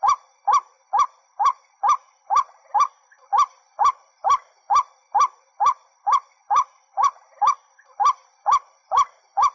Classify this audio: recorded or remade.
remade